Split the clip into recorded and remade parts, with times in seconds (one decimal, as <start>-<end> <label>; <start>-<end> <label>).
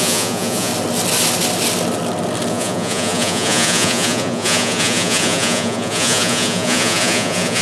0.0-0.7 remade; 0.7-2.5 recorded; 2.5-7.6 remade